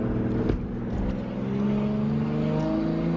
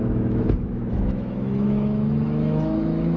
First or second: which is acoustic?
first